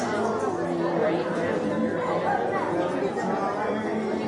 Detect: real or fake real